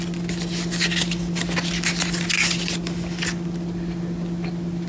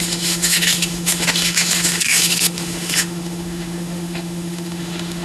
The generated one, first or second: second